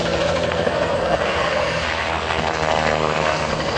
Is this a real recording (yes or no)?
no